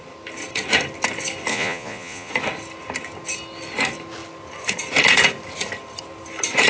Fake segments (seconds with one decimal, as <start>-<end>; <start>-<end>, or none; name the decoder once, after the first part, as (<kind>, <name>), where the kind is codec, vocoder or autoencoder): 1.5-2.3 (vocoder, Vocos)